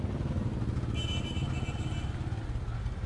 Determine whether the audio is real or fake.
real